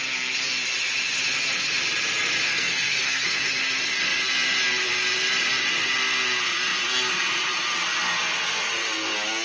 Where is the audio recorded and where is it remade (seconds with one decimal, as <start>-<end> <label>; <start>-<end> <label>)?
0.0-2.5 recorded; 2.5-3.6 remade; 3.6-9.4 recorded